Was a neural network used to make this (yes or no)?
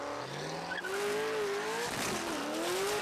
no